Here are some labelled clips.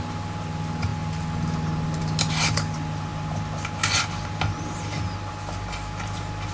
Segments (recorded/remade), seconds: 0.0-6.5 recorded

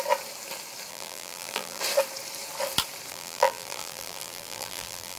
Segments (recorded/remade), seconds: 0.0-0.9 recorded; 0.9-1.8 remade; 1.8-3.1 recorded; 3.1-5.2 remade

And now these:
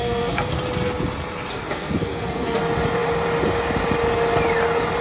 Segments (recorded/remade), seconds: 0.0-0.5 remade; 0.5-1.5 recorded; 1.5-2.6 remade; 2.6-5.0 recorded